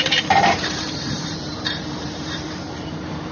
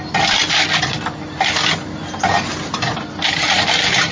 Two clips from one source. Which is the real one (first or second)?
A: second